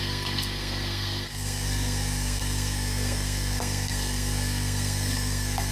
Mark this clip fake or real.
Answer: fake